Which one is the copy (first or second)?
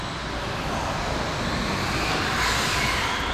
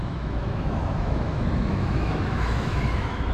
second